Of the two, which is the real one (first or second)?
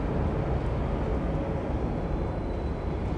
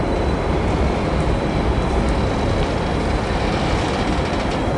first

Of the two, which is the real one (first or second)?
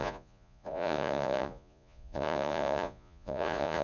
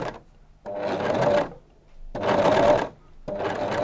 second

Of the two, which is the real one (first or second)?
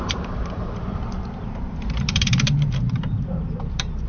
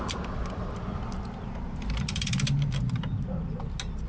second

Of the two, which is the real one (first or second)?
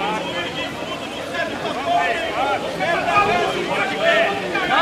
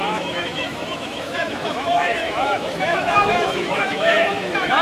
first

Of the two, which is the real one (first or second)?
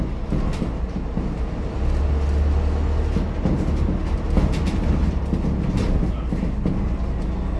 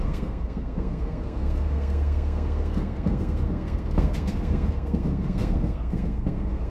first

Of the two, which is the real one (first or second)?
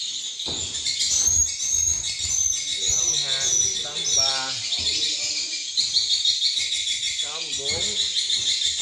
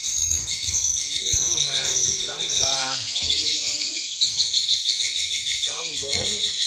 first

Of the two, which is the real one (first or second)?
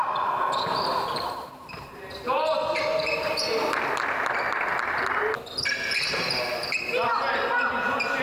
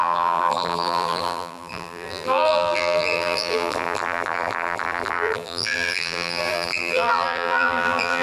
first